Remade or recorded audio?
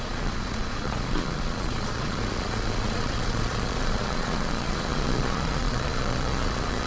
remade